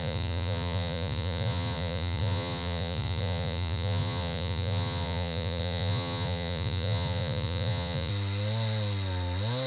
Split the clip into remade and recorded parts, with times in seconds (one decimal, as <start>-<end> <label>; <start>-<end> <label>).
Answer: 0.0-8.1 remade; 8.1-9.7 recorded